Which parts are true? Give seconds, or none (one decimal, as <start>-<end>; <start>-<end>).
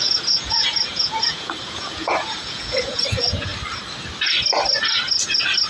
3.5-5.7